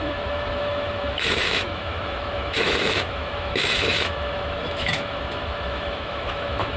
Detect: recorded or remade remade